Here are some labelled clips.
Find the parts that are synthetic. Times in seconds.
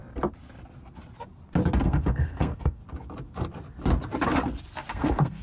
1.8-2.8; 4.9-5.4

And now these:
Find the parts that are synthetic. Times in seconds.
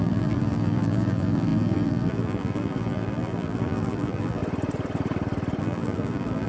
0.0-4.4; 5.6-6.5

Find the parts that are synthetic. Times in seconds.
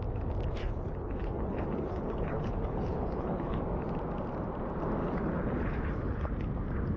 0.6-3.6; 5.0-6.3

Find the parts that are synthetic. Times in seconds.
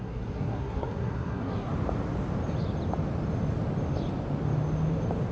0.0-1.7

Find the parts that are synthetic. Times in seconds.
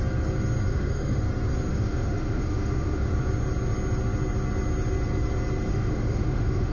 0.7-1.2; 1.7-3.1; 5.7-6.7